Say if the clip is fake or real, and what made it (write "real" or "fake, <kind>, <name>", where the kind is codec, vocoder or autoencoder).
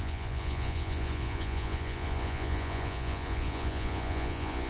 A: fake, vocoder, Vocos